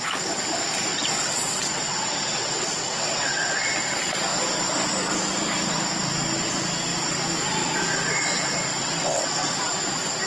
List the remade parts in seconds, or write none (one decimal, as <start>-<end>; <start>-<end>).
0.9-3.7; 8.8-9.5